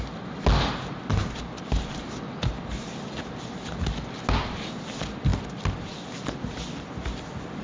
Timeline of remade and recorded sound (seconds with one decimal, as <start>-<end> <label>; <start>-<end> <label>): 0.0-7.6 recorded